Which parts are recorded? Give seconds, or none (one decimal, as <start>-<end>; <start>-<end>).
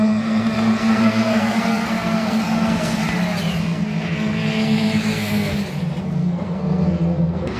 3.0-3.6; 5.5-6.0